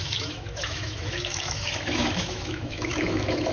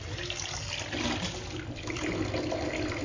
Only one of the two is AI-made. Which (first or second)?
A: first